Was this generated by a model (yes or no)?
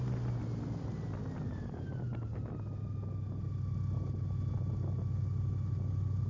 no